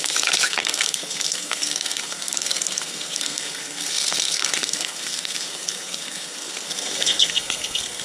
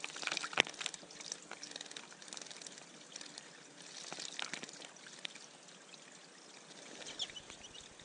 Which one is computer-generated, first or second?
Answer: first